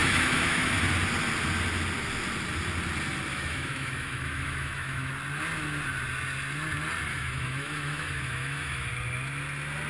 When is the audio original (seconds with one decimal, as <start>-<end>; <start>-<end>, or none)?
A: 0.8-3.3; 5.1-7.1; 8.9-9.9